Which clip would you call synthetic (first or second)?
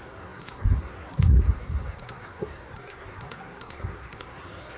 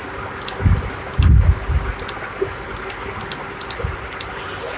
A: first